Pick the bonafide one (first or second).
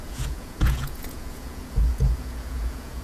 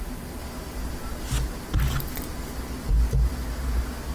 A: second